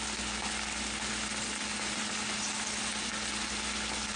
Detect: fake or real real